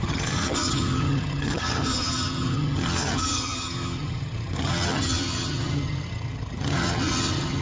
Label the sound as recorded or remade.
remade